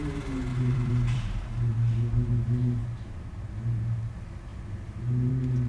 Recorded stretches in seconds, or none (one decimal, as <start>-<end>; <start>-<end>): 0.0-0.5; 1.7-2.8; 3.5-5.7